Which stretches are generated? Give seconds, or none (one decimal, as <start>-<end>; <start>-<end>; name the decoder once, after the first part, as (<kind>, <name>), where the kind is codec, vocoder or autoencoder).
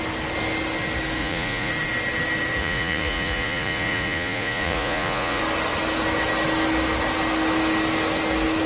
1.2-1.7 (vocoder, Vocos); 2.6-5.4